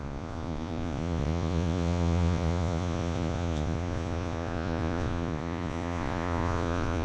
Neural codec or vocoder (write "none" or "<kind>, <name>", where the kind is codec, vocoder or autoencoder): vocoder, Vocos